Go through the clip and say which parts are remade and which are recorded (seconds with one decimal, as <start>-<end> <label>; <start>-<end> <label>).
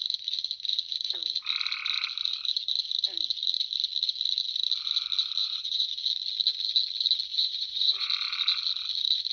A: 0.0-5.4 recorded; 5.4-5.9 remade; 5.9-7.3 recorded; 7.3-8.1 remade; 8.1-9.3 recorded